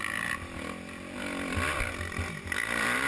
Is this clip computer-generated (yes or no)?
no